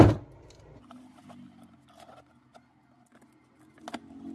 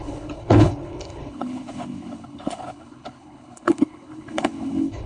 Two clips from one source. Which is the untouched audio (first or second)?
first